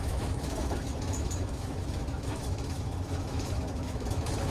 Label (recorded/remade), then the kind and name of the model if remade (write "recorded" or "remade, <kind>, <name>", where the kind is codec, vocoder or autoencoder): remade, autoencoder, DAC-VAE